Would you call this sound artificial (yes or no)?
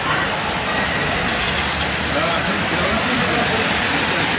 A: no